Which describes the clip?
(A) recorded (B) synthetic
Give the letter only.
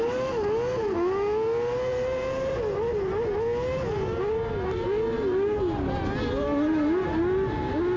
A